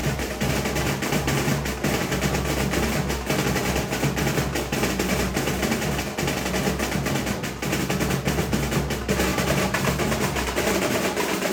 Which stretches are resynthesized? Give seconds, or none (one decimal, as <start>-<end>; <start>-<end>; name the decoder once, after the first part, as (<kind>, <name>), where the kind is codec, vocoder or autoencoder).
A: 0.0-0.5 (vocoder, BigVGAN v2); 9.3-11.5